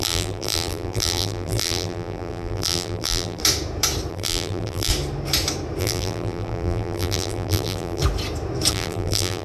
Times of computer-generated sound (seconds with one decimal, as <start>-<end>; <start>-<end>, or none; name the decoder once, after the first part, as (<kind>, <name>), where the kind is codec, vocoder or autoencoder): 0.0-3.4 (vocoder, BigVGAN v2); 4.1-4.9; 5.8-8.0; 8.7-9.4

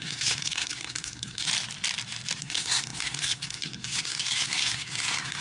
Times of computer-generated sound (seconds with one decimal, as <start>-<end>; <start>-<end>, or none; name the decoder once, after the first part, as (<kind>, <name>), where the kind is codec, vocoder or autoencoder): 0.0-1.5 (codec, SNAC); 2.4-5.4

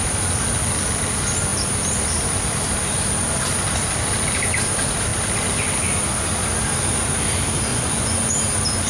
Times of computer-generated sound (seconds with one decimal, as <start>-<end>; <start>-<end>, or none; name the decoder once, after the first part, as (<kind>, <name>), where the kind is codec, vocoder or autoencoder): 7.7-8.3 (vocoder, Vocos)

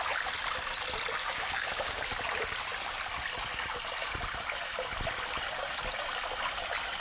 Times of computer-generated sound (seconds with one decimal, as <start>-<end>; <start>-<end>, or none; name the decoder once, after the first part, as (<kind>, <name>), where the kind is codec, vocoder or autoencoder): 1.2-2.0 (codec, DAC)

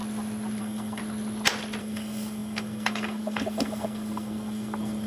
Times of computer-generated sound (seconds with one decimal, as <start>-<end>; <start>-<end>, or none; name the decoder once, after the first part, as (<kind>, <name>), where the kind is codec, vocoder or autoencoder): 0.6-1.0 (codec, SNAC); 1.8-5.1

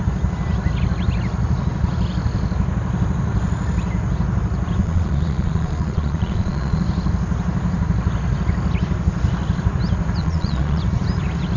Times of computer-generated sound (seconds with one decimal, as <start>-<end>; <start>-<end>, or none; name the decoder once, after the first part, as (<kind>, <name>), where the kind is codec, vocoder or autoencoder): 4.8-6.8 (vocoder, Vocos); 10.2-10.8